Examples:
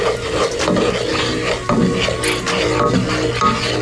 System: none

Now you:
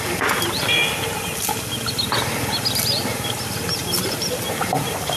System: none